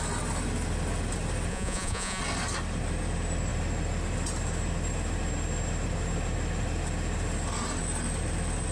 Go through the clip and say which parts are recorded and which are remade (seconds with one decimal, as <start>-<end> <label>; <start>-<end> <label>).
0.0-1.5 recorded; 1.5-2.2 remade; 2.2-8.7 recorded